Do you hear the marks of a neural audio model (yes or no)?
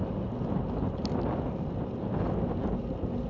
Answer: no